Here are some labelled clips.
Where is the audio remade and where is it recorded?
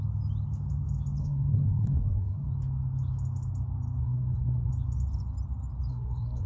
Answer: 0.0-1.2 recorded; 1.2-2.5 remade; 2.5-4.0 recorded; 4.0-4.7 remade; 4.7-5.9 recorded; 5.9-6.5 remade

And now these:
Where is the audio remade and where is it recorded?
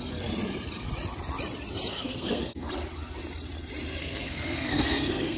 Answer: 0.0-1.9 recorded; 1.9-2.7 remade; 2.7-4.0 recorded; 4.0-5.4 remade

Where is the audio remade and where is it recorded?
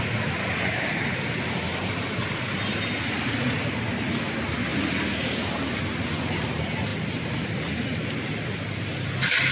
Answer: 0.0-9.5 recorded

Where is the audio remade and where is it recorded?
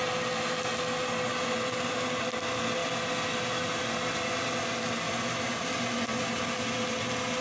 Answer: 0.0-7.4 recorded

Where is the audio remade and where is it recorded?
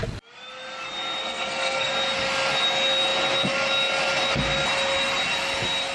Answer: 0.0-1.2 recorded; 1.2-1.9 remade; 1.9-5.9 recorded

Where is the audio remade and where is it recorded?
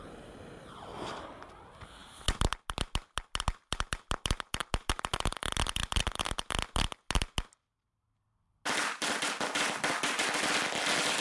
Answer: 0.0-11.2 recorded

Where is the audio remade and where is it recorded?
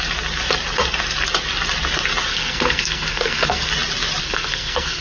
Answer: 0.0-2.3 recorded; 2.3-3.7 remade; 3.7-4.2 recorded; 4.2-5.0 remade